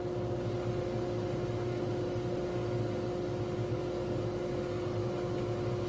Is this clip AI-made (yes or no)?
no